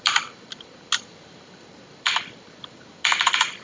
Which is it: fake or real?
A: real